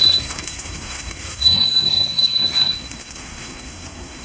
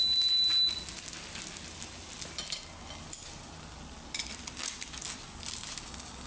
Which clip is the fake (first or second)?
first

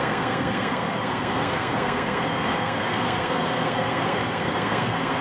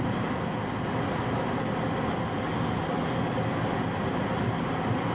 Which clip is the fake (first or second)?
first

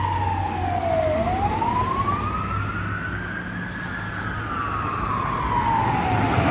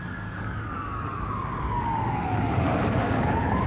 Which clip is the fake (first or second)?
second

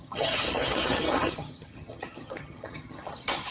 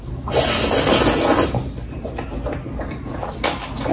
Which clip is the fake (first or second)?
first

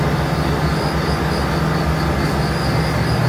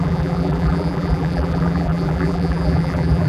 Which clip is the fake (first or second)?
second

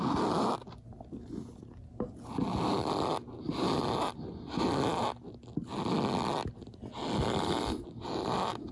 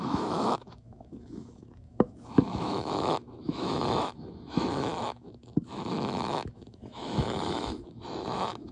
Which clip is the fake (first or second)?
second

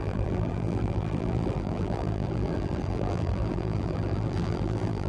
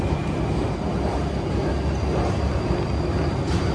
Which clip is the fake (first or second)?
first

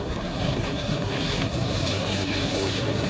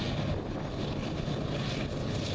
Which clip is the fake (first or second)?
first